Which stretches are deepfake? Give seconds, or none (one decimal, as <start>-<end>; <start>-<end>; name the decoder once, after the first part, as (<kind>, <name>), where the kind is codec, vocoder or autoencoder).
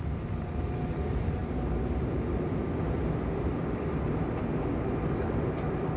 none